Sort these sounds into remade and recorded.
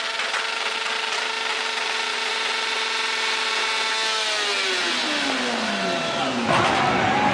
recorded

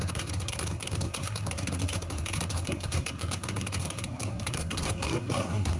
remade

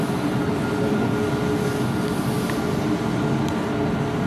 recorded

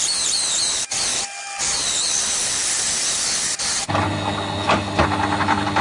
recorded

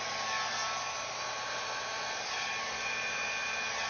recorded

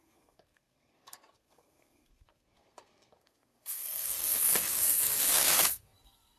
remade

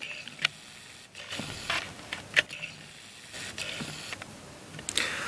recorded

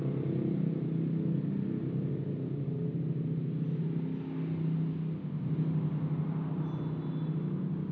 recorded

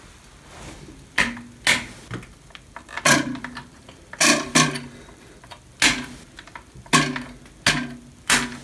recorded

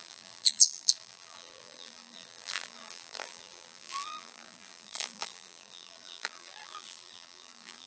remade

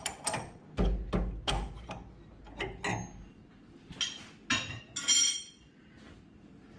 recorded